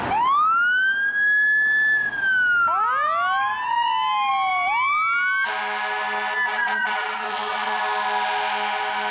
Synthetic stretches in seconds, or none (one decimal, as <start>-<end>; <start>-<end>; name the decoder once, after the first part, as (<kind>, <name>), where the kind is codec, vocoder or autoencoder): 6.5-7.8 (vocoder, Vocos)